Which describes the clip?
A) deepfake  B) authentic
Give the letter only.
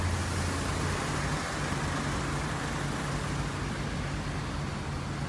B